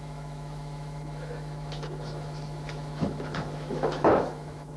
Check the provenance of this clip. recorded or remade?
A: remade